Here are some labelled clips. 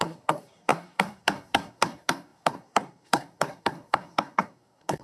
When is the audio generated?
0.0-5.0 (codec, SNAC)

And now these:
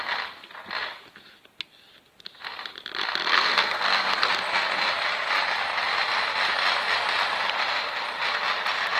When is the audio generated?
3.3-4.3 (codec, SNAC)

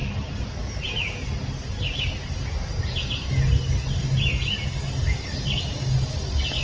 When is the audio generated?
none

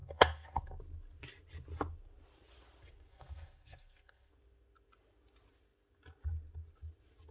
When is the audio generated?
0.0-0.8 (codec, SNAC); 3.1-4.3